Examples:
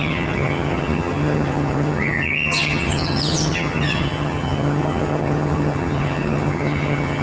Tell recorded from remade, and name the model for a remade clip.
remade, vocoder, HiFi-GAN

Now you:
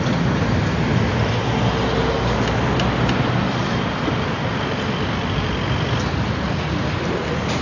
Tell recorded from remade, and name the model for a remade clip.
recorded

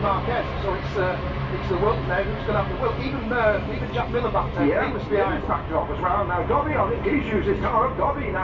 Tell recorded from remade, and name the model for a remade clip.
recorded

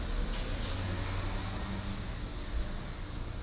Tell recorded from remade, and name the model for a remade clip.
recorded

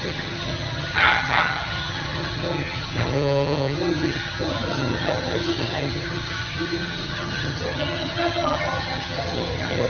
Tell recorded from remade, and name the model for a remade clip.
remade, vocoder, HiFi-GAN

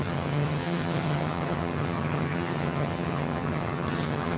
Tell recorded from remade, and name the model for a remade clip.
remade, vocoder, HiFi-GAN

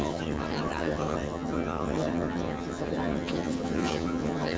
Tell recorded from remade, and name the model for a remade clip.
remade, vocoder, HiFi-GAN